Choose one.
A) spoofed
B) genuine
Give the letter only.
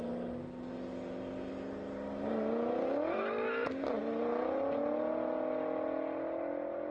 B